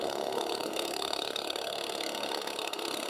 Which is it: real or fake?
fake